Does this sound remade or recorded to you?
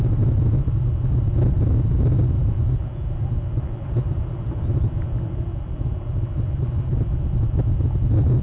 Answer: recorded